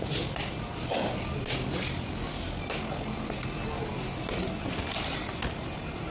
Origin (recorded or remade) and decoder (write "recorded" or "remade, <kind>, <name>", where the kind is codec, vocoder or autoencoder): recorded